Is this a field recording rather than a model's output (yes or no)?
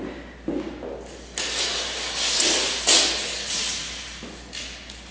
yes